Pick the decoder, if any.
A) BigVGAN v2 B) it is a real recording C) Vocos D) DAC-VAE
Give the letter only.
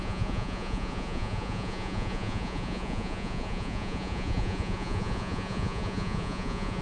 C